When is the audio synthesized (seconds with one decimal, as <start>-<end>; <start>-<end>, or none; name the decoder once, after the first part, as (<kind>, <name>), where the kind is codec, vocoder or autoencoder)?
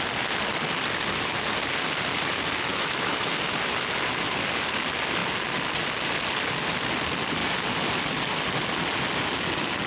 2.7-3.3 (autoencoder, DAC-VAE)